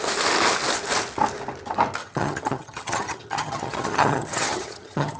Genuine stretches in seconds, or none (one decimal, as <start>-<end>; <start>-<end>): 0.0-2.0